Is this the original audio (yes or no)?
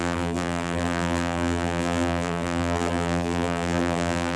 no